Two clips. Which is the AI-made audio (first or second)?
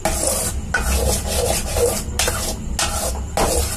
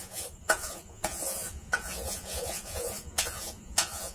second